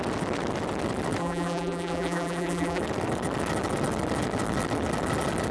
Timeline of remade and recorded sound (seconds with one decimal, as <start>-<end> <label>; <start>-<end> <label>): 0.0-1.2 recorded; 1.2-2.8 remade; 2.8-5.5 recorded